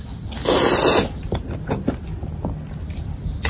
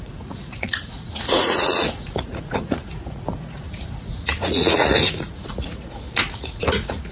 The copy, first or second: second